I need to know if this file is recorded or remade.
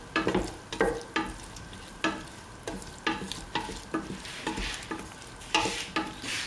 recorded